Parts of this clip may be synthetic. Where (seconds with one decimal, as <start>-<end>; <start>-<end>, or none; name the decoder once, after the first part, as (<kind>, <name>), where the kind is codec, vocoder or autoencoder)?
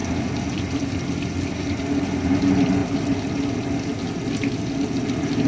0.0-2.8 (vocoder, BigVGAN v2)